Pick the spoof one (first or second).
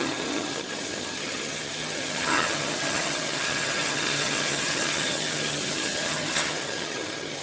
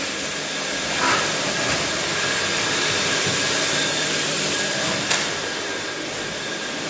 first